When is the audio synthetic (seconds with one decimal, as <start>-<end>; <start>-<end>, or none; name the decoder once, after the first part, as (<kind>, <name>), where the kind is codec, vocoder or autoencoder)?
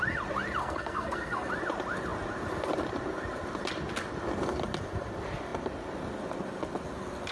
0.6-1.5 (codec, SNAC)